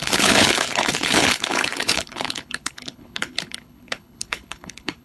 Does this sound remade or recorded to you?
remade